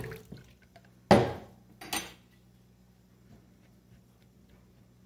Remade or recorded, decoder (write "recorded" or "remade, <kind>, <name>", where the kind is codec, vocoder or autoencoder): recorded